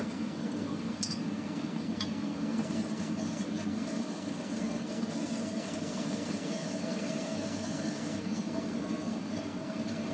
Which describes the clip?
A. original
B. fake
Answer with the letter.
B